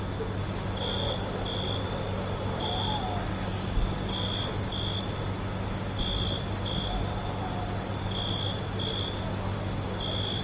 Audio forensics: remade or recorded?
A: recorded